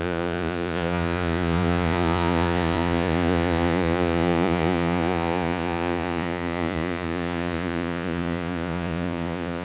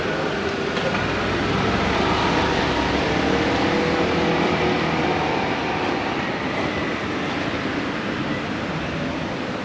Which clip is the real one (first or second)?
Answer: second